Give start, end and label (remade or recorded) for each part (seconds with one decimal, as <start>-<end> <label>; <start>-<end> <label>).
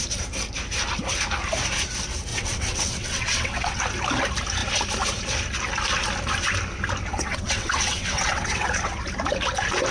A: 0.0-2.3 recorded; 2.3-3.8 remade; 3.8-7.1 recorded; 7.1-9.0 remade; 9.0-9.9 recorded